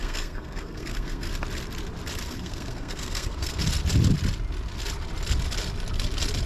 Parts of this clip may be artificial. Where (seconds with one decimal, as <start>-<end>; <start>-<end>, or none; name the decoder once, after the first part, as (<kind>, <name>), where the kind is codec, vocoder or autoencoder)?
0.0-1.3 (codec, SNAC); 2.3-3.6